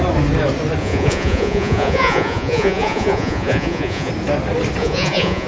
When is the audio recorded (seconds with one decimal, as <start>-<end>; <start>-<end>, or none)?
0.0-0.8; 4.1-4.8